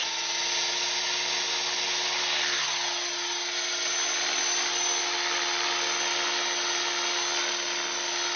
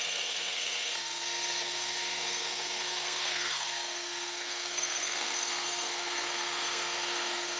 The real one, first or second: first